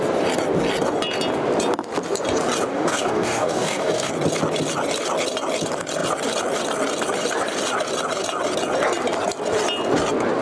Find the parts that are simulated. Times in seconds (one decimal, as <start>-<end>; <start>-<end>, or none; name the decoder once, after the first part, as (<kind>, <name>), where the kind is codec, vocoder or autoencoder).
2.7-4.1 (codec, DAC)